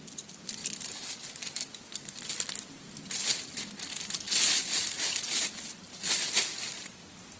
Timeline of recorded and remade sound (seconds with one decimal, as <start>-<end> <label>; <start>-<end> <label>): 0.0-7.4 recorded